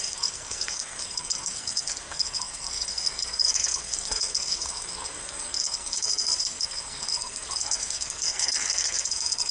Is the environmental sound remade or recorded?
remade